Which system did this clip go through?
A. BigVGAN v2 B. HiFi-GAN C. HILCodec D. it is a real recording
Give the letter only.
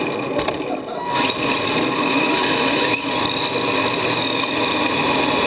D